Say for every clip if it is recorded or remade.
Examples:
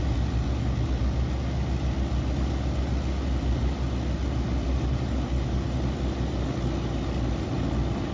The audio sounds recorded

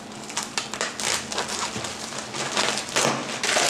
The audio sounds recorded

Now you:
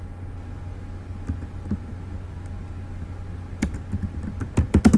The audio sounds recorded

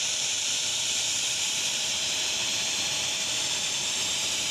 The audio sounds remade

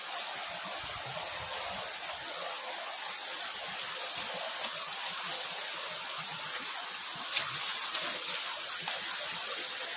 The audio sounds recorded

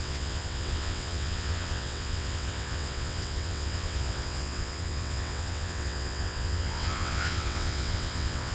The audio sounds remade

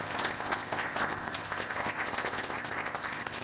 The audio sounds remade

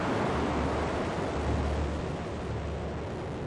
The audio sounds recorded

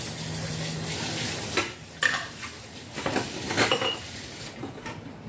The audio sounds recorded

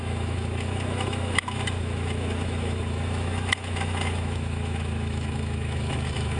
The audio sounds remade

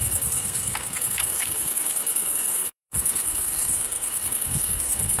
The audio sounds remade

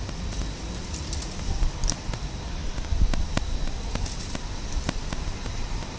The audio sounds remade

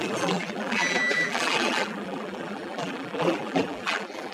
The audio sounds remade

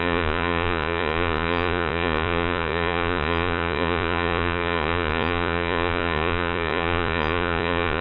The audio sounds remade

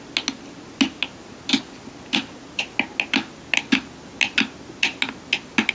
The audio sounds recorded